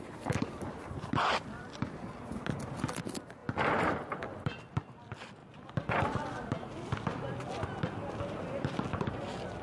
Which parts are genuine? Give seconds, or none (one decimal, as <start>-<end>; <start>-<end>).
0.0-9.6